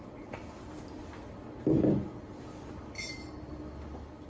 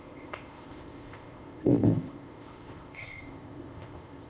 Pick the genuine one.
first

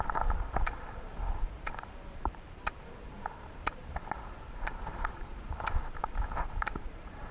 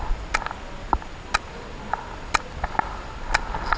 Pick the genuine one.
second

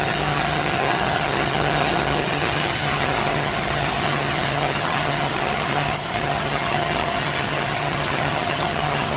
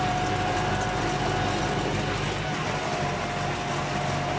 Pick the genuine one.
second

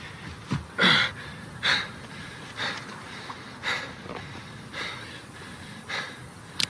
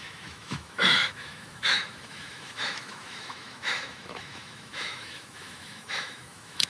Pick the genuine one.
first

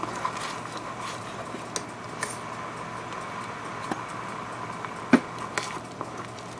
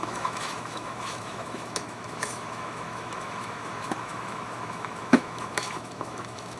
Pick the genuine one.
first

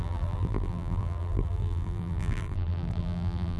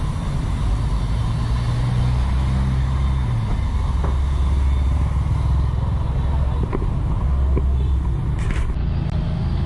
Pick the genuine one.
second